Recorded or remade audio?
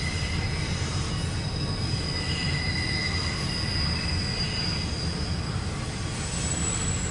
recorded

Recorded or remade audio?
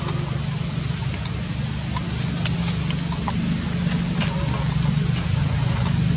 recorded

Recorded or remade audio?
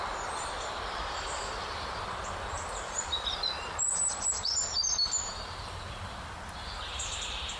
remade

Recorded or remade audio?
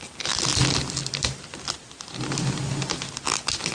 recorded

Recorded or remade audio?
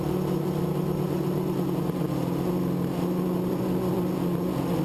recorded